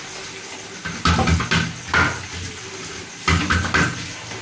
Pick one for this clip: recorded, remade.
recorded